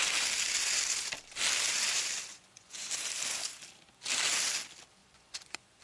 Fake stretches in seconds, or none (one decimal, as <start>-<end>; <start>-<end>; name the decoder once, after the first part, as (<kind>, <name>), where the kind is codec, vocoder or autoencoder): 2.3-2.9 (vocoder, Vocos); 5.0-5.8